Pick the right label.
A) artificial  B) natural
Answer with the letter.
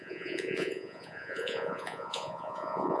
A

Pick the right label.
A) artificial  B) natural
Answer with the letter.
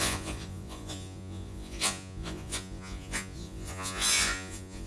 A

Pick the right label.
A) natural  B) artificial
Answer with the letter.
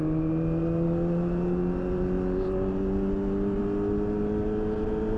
A